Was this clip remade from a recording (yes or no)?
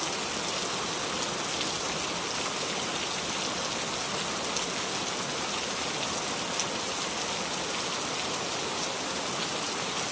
no